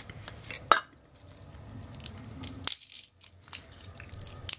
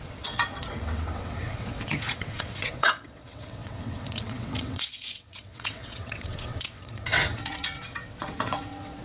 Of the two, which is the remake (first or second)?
second